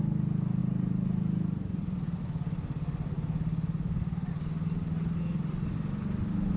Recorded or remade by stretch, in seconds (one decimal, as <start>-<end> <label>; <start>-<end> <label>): 0.0-6.6 recorded